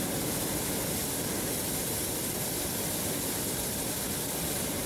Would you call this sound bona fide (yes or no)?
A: yes